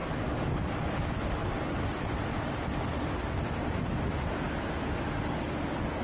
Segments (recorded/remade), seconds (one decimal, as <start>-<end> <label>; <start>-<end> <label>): 0.0-6.0 recorded